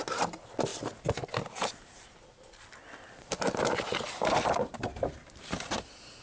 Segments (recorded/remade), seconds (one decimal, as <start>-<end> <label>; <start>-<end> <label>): 0.0-6.2 recorded